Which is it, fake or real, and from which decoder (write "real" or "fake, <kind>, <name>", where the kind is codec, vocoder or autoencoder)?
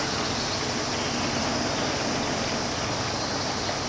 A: real